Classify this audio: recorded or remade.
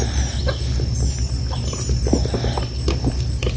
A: recorded